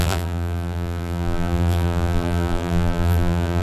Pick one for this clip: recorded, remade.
remade